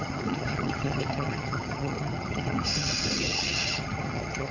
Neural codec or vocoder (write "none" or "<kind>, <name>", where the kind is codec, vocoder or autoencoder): vocoder, HiFi-GAN